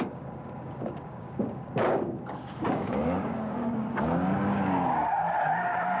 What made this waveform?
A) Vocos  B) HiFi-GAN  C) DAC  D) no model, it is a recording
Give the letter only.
C